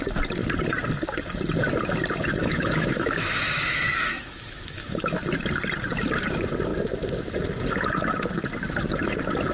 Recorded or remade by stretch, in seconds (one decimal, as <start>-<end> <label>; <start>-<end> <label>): 0.0-2.4 recorded; 2.4-5.2 remade; 5.2-9.5 recorded